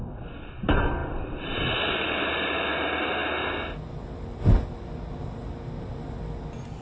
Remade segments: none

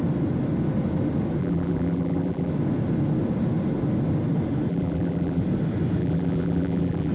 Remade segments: 1.4-2.5 (vocoder, BigVGAN v2); 4.7-5.4; 6.0-7.1